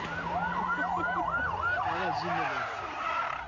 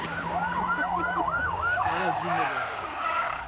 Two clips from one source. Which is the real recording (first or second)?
first